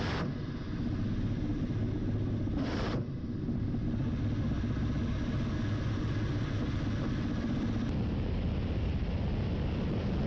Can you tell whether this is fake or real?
real